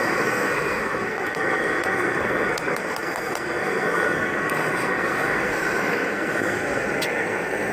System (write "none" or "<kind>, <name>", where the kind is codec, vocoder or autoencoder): codec, SNAC